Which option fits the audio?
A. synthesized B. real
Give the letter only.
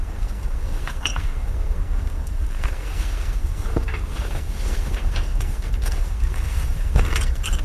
A